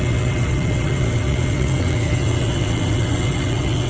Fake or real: fake